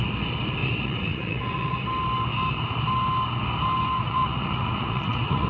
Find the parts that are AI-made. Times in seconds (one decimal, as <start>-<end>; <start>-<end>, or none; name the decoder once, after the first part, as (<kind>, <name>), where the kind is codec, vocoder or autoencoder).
0.6-1.8 (vocoder, Vocos); 4.0-5.5